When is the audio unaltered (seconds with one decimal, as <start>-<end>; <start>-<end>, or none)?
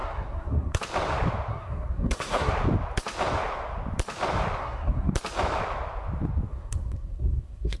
0.8-1.5; 2.5-4.6; 5.1-6.5